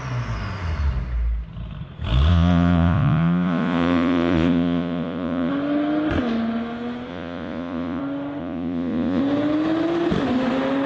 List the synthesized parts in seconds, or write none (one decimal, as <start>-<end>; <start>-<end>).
2.3-5.5; 7.1-8.0; 8.4-9.2